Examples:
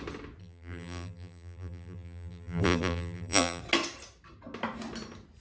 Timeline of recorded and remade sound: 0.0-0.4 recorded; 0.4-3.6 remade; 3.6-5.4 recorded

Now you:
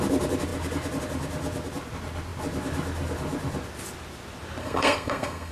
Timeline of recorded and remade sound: 0.0-4.6 recorded; 4.6-5.5 remade

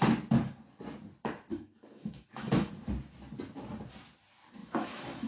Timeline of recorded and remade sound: 0.0-1.5 recorded; 1.5-2.7 remade; 2.7-4.6 recorded; 4.6-5.3 remade